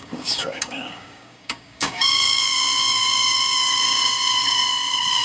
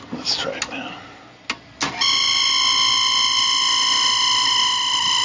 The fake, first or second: first